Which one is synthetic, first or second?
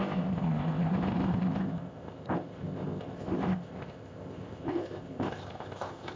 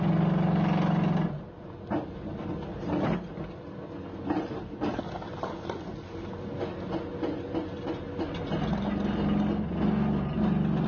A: first